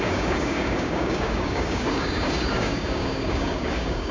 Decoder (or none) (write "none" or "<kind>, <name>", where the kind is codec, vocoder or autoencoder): codec, DAC